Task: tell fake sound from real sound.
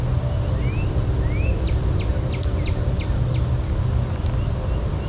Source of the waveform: real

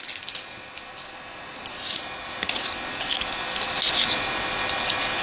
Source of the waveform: real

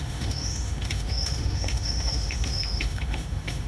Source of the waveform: fake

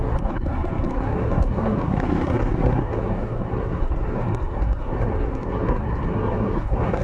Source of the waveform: fake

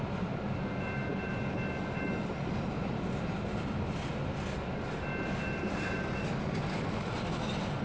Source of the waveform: real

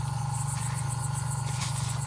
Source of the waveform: fake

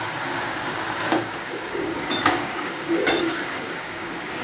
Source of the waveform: fake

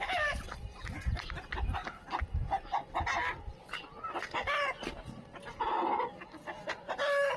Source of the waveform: real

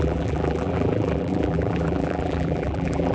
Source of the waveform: fake